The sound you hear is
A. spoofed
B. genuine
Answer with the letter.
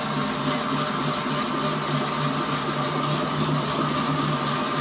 B